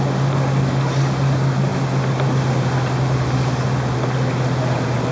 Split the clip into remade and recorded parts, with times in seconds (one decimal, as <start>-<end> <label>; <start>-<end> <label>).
0.0-5.1 recorded